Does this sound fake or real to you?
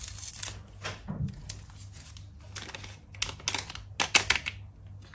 real